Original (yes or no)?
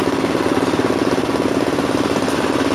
yes